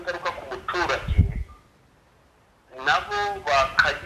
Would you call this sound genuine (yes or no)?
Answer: yes